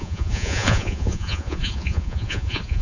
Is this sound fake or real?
fake